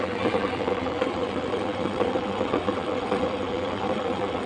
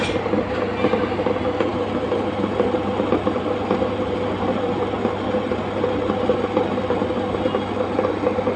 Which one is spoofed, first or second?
first